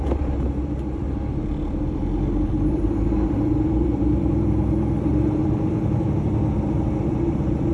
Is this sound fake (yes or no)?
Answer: yes